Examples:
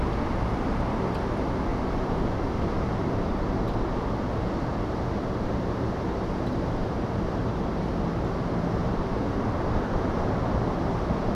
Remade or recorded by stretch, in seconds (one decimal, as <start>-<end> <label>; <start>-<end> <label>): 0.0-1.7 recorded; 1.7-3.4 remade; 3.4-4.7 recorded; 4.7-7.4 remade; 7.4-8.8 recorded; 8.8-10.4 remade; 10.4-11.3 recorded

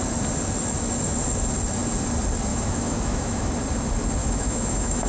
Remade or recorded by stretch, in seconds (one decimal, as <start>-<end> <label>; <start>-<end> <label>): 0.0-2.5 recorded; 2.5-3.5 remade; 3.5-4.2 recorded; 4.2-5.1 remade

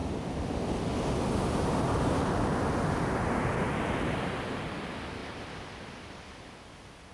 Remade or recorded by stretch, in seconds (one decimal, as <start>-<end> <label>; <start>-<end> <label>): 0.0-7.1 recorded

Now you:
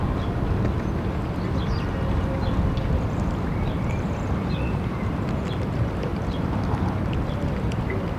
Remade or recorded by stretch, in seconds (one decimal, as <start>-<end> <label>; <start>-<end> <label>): 0.0-6.1 recorded; 6.1-6.7 remade; 6.7-8.2 recorded

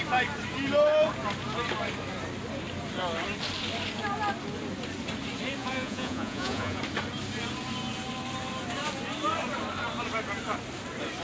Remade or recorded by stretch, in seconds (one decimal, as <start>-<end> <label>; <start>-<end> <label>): 0.0-5.6 recorded; 5.6-6.8 remade; 6.8-11.2 recorded